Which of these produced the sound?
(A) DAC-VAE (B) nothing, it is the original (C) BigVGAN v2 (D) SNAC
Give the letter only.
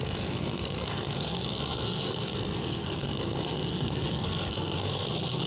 D